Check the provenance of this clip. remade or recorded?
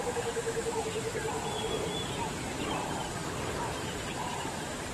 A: remade